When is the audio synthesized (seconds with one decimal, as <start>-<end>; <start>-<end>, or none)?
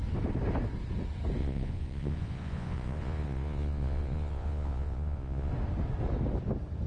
1.4-5.5